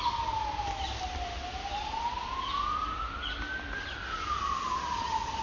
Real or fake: real